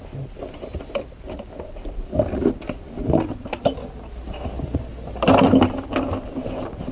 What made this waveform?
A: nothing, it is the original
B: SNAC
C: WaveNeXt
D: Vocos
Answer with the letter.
A